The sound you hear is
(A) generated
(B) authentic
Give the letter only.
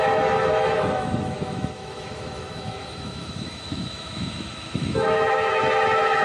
A